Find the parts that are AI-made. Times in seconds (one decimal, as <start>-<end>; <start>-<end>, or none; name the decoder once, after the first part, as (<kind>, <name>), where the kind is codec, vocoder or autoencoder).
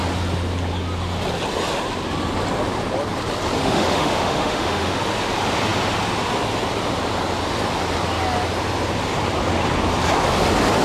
3.6-5.0 (autoencoder, DAC-VAE)